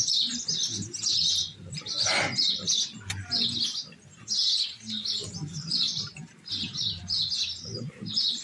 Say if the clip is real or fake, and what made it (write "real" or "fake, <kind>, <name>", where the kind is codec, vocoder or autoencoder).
real